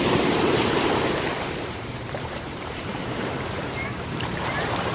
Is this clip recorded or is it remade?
remade